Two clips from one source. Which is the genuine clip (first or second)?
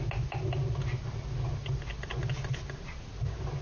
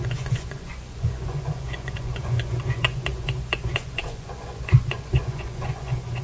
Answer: first